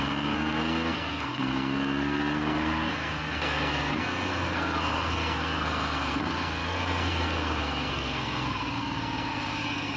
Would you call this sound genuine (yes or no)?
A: no